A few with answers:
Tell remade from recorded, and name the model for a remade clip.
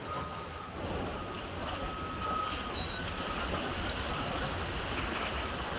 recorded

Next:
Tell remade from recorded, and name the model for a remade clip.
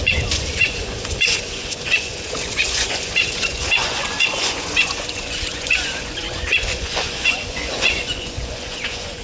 remade, vocoder, Vocos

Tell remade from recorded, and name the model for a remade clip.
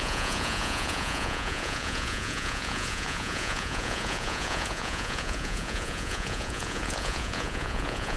remade, vocoder, Vocos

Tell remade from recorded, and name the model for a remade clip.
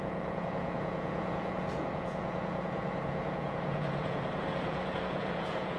remade, vocoder, Vocos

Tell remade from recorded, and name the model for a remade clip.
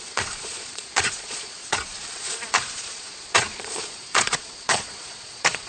remade, vocoder, Vocos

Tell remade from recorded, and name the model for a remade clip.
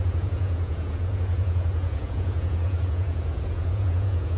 remade, vocoder, Vocos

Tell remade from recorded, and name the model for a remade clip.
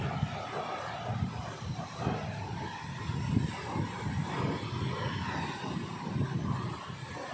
recorded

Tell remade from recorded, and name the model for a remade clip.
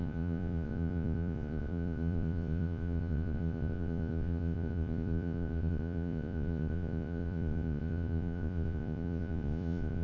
remade, vocoder, Vocos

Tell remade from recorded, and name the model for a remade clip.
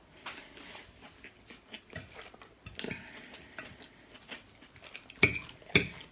recorded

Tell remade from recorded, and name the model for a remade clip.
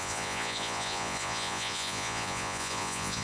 remade, vocoder, Vocos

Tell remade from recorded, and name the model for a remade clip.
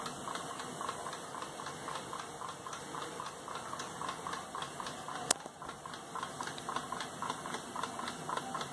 recorded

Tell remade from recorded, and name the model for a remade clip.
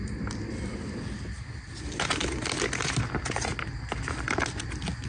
recorded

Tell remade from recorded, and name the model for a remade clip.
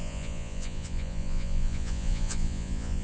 remade, vocoder, Vocos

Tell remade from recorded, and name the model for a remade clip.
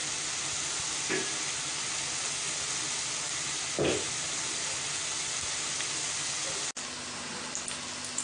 recorded